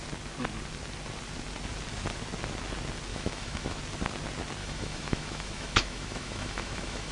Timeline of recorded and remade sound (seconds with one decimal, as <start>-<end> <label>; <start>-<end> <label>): 0.0-3.1 recorded; 3.1-3.8 remade; 3.8-4.6 recorded; 4.6-7.1 remade

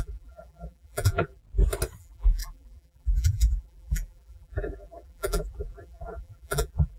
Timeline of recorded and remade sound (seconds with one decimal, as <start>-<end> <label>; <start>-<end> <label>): 0.0-1.4 remade; 1.4-2.0 recorded; 2.0-7.0 remade

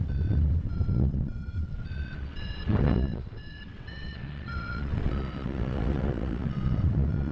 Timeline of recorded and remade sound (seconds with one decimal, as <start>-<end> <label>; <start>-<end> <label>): 0.0-7.3 remade

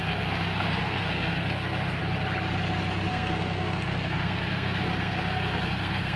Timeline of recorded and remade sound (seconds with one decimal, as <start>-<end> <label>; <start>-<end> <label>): 0.0-2.0 remade; 2.0-3.1 recorded; 3.1-6.2 remade

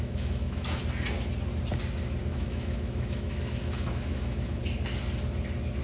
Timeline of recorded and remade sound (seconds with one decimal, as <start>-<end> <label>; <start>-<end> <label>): 0.0-0.8 remade; 0.8-2.2 recorded; 2.2-4.6 remade; 4.6-5.8 recorded